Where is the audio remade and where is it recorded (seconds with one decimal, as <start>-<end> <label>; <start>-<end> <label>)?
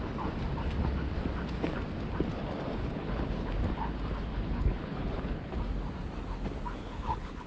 0.0-2.8 recorded; 2.8-3.5 remade; 3.5-4.3 recorded; 4.3-5.6 remade; 5.6-6.8 recorded; 6.8-7.5 remade